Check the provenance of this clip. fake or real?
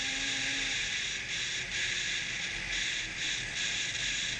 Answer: real